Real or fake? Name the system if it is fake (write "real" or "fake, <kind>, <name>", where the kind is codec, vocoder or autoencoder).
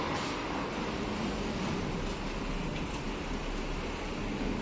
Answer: real